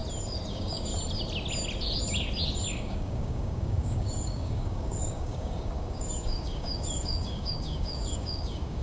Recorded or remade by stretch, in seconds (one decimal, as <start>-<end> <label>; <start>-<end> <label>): 0.0-0.5 recorded; 0.5-0.9 remade; 0.9-2.8 recorded; 2.8-8.8 remade

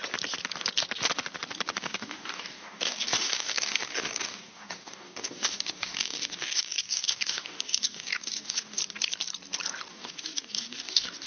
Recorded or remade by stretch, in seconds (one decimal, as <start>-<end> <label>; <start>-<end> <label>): 0.0-1.8 recorded; 1.8-8.8 remade; 8.8-9.9 recorded; 9.9-11.3 remade

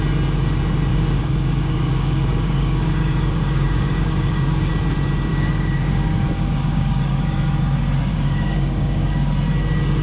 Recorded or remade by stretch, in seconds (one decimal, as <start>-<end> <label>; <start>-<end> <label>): 0.0-0.9 recorded; 0.9-4.7 remade; 4.7-5.3 recorded; 5.3-7.5 remade; 7.5-8.1 recorded; 8.1-9.3 remade; 9.3-10.0 recorded

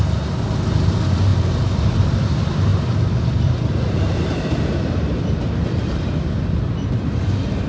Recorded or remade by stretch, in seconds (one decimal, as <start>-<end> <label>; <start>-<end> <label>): 0.0-7.7 recorded

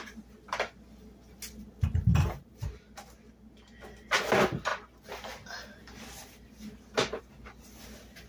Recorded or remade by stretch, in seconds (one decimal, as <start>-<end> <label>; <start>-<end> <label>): 0.0-8.3 recorded

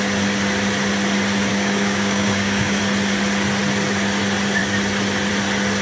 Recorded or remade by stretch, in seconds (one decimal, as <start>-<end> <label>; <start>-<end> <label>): 0.0-1.5 recorded; 1.5-2.8 remade; 2.8-5.8 recorded

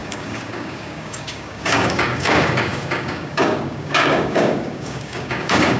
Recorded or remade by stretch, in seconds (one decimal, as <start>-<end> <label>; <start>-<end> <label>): 0.0-5.8 remade